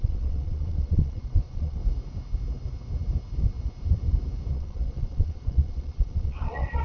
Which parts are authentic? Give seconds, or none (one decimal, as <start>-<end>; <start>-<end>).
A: 1.8-4.5